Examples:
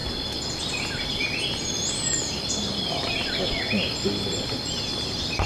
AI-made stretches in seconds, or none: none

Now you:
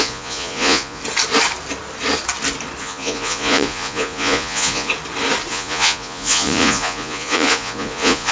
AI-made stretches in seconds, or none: 0.0-1.0; 2.8-4.9; 5.5-8.3

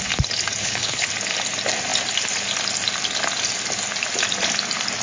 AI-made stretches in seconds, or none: 0.6-1.1

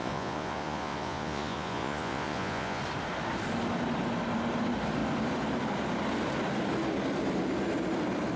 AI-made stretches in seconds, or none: 0.0-2.8

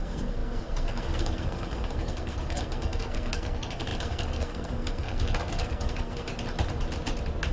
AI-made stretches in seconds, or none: 0.0-6.3

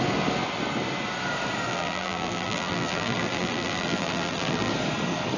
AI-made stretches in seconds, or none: 1.7-4.7